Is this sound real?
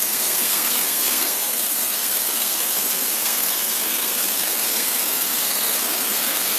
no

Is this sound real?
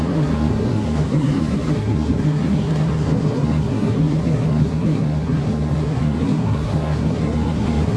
no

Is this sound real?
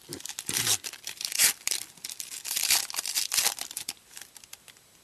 yes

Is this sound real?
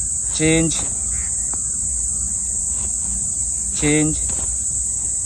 yes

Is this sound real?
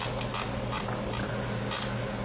yes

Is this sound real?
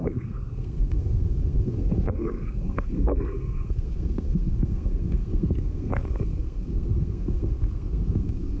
no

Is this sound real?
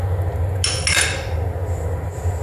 yes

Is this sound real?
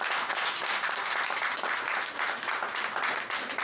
yes